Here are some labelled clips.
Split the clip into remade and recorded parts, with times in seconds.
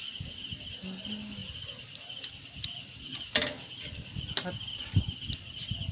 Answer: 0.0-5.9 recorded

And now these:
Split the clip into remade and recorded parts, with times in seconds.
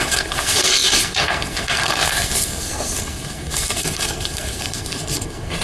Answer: 0.0-5.6 remade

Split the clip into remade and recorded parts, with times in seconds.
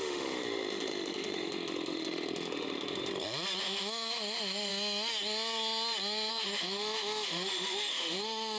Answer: 0.0-3.1 remade; 3.1-3.6 recorded; 3.6-4.7 remade; 4.7-6.3 recorded; 6.3-8.6 remade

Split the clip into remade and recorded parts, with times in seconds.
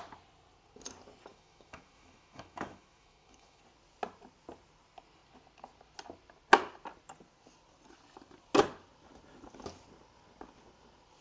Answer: 0.0-1.3 recorded; 1.3-3.6 remade; 3.6-11.2 recorded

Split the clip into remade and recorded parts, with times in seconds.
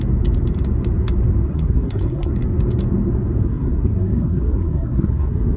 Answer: 0.0-1.5 recorded; 1.5-2.3 remade; 2.3-3.4 recorded; 3.4-5.6 remade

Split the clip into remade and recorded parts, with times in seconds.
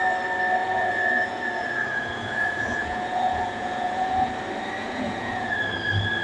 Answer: 0.0-0.6 recorded; 0.6-4.3 remade; 4.3-4.8 recorded; 4.8-5.5 remade; 5.5-6.2 recorded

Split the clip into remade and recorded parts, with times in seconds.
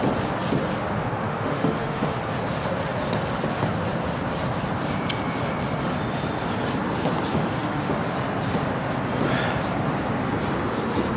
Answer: 0.0-1.2 recorded; 1.2-2.2 remade; 2.2-7.3 recorded; 7.3-7.9 remade; 7.9-11.2 recorded